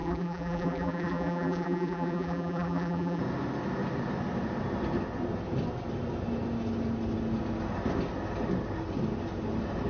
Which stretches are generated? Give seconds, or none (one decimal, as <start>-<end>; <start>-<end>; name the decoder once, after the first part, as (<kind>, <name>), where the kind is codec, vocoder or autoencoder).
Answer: 0.0-3.2 (vocoder, BigVGAN v2)